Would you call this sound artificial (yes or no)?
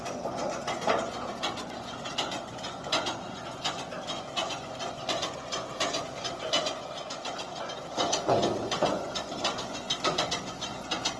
yes